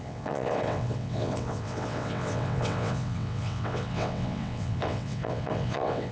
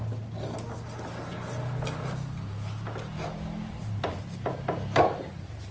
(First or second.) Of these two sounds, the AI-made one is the first